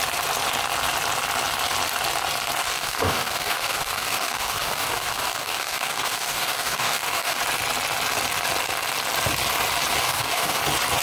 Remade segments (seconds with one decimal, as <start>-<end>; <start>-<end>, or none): 2.6-7.4; 10.0-10.6